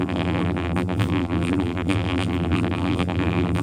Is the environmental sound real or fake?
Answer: fake